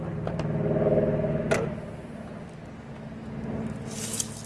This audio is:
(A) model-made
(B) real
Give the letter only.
B